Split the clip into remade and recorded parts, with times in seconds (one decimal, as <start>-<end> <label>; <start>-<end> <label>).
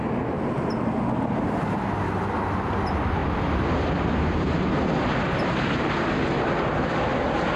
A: 0.0-7.6 recorded